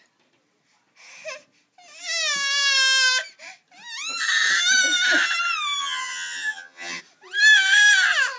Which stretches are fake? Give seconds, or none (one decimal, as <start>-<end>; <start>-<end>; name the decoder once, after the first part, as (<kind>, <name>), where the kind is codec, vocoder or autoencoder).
5.8-7.0 (vocoder, HiFi-GAN)